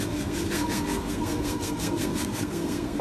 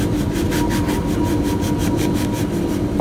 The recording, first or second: second